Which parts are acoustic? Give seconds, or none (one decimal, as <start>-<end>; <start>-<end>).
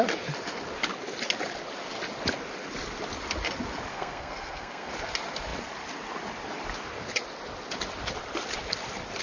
0.0-3.9; 4.9-9.2